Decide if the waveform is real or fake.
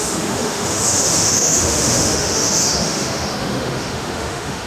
fake